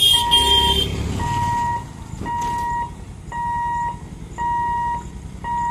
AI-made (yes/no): no